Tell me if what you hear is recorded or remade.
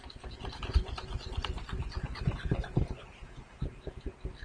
recorded